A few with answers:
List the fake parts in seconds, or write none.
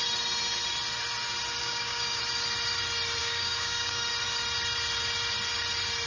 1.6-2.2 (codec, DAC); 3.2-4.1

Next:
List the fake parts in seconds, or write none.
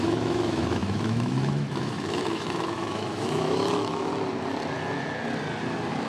0.0-4.1 (autoencoder, DAC-VAE)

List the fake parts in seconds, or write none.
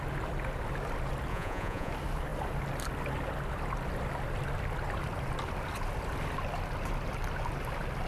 1.3-1.9 (vocoder, Vocos)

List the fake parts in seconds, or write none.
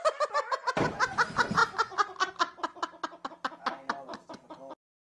none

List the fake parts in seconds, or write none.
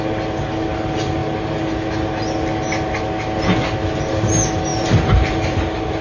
4.7-6.0 (vocoder, BigVGAN v2)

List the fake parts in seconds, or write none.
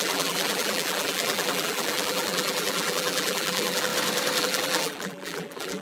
0.0-3.9 (vocoder, BigVGAN v2); 4.4-5.8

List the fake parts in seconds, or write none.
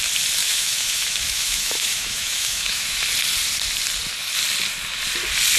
0.4-3.0 (autoencoder, DAC-VAE)